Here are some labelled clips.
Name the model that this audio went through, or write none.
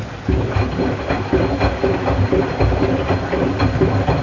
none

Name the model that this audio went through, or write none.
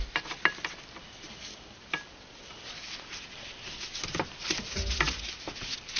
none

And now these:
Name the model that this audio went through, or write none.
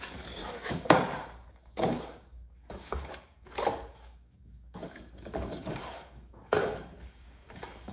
codec, DAC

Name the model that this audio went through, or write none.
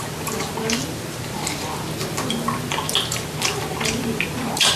none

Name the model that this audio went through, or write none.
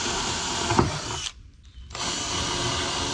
none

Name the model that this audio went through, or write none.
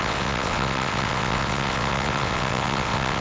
vocoder, WaveNeXt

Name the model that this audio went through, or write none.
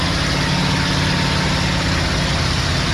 none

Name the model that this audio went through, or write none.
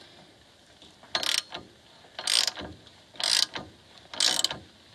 none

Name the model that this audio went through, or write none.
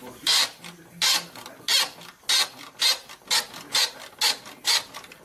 none